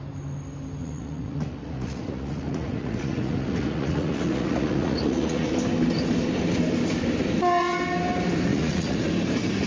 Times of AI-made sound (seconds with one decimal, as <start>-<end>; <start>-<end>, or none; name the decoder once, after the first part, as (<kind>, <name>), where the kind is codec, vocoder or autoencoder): 0.8-5.5 (vocoder, Vocos); 8.5-9.1